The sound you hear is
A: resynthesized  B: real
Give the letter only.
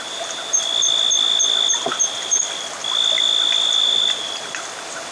B